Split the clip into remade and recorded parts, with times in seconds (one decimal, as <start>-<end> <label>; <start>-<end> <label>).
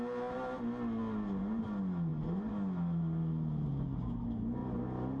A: 0.0-5.2 recorded